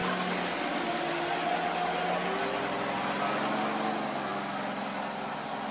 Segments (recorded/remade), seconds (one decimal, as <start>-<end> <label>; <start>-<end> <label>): 0.0-5.7 recorded